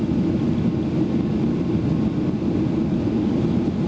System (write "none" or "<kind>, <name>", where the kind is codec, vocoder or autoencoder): none